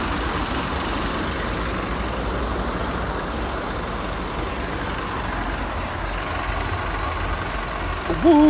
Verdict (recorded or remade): recorded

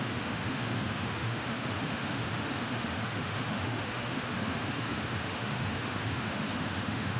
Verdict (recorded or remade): remade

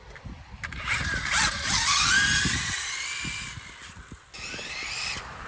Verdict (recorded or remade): recorded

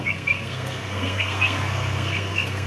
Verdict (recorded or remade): remade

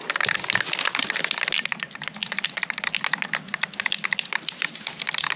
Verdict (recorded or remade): recorded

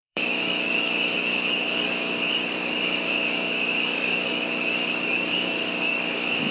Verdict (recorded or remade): remade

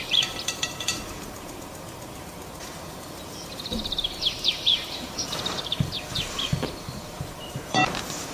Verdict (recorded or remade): remade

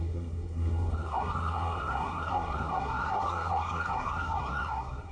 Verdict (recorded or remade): remade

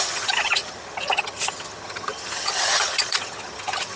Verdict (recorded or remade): remade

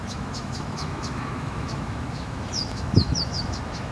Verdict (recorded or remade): remade